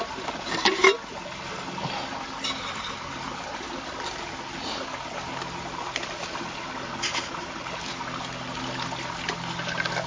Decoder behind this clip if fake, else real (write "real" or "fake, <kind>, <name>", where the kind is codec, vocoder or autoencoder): real